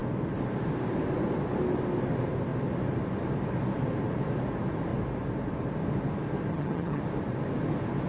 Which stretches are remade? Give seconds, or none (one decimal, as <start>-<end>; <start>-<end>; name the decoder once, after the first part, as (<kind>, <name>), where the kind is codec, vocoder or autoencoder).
6.5-7.0 (vocoder, HiFi-GAN)